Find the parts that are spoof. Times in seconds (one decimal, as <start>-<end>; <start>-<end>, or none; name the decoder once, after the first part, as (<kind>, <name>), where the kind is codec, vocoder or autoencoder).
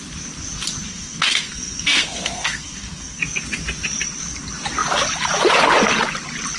0.9-3.2 (codec, SNAC)